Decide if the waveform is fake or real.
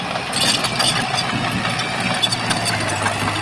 real